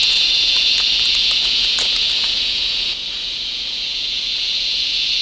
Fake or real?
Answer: fake